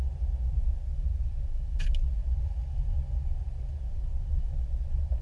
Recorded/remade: remade